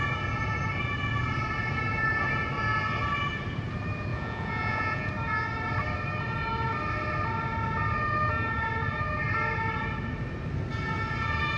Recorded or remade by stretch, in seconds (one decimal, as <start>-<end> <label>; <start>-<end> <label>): 0.0-4.1 recorded; 4.1-5.1 remade; 5.1-11.6 recorded